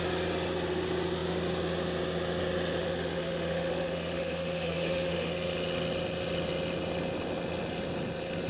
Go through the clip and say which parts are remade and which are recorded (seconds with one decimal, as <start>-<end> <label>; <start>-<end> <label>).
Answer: 0.0-2.8 recorded; 2.8-5.3 remade; 5.3-8.5 recorded